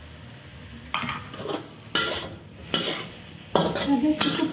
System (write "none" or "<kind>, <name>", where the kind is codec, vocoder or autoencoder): none